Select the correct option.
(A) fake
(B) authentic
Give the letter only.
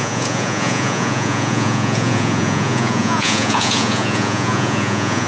A